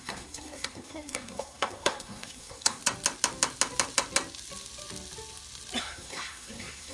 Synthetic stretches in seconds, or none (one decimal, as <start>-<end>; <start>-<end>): 0.0-2.8; 5.8-6.9